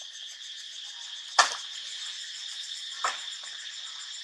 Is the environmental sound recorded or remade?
recorded